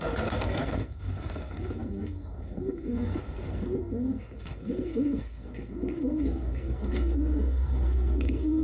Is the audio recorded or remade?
remade